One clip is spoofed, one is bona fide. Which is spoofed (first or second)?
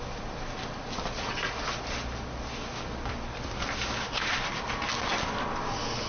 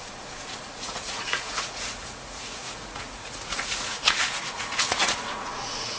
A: second